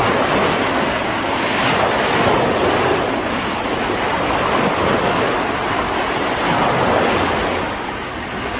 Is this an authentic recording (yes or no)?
yes